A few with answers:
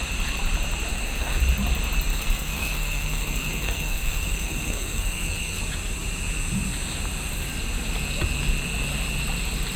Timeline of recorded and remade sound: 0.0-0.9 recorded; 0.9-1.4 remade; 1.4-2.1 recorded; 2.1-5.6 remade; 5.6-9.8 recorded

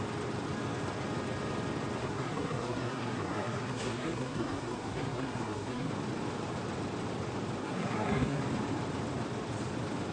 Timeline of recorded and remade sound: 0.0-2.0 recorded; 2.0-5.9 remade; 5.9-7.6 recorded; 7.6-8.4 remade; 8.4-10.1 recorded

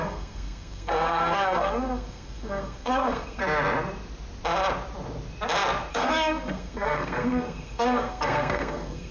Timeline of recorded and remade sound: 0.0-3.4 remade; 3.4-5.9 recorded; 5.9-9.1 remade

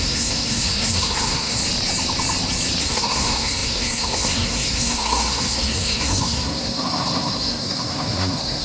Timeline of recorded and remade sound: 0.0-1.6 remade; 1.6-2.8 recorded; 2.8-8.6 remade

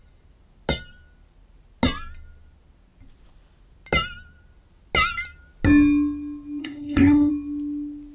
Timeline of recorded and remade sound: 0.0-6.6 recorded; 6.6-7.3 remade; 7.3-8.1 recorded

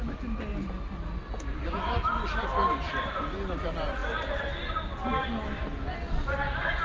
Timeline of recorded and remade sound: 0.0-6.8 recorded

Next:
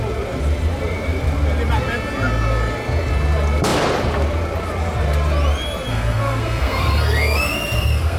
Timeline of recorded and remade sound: 0.0-5.9 recorded; 5.9-8.2 remade

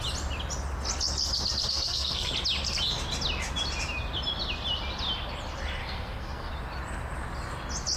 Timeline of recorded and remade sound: 0.0-1.7 recorded; 1.7-2.3 remade; 2.3-5.8 recorded; 5.8-6.5 remade; 6.5-8.0 recorded